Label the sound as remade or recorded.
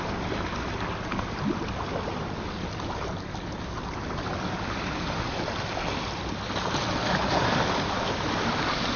recorded